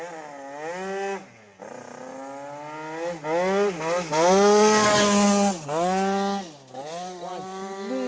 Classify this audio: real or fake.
real